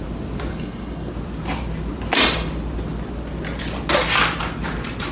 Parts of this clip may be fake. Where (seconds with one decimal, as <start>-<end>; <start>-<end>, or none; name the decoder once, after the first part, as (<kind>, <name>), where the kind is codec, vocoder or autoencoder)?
0.5-1.1 (codec, SNAC)